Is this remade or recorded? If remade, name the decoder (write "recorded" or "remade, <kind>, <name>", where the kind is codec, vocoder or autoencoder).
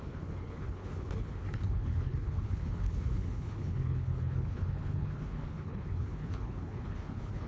remade, codec, HILCodec